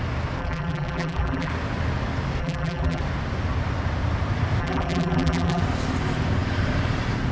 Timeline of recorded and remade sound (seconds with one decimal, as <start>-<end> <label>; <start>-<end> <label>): 0.0-0.4 recorded; 0.4-1.5 remade; 1.5-2.4 recorded; 2.4-3.0 remade; 3.0-4.6 recorded; 4.6-5.6 remade; 5.6-7.3 recorded